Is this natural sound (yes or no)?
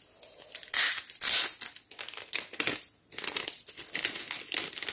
yes